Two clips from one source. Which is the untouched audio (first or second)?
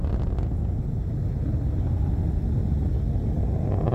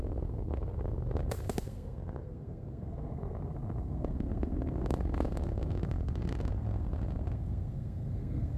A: first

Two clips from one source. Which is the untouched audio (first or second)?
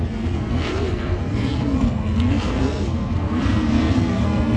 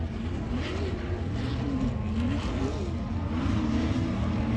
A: second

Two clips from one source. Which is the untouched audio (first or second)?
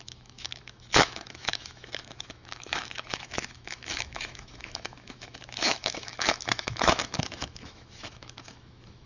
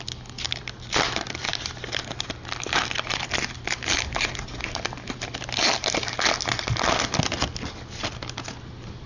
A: second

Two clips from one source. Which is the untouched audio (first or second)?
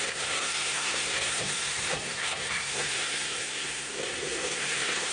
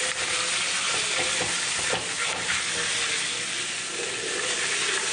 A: second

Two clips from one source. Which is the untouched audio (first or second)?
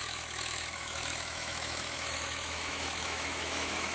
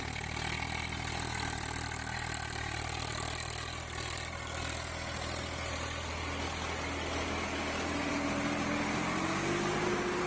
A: second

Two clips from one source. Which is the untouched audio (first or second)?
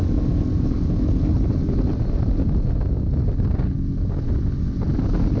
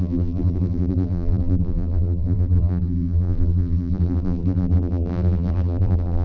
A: first